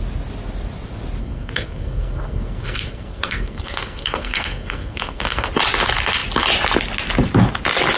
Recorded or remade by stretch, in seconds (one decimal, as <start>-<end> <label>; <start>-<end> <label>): 0.0-1.2 recorded; 1.2-5.5 remade; 5.5-8.0 recorded